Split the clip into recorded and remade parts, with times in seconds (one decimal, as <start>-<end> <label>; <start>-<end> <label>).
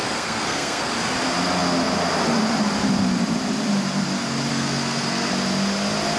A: 0.0-0.9 remade; 0.9-4.5 recorded; 4.5-5.3 remade; 5.3-6.2 recorded